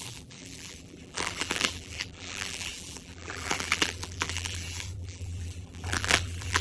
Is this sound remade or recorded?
remade